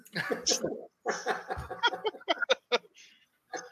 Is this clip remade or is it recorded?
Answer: recorded